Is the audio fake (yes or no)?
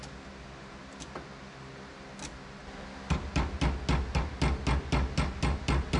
no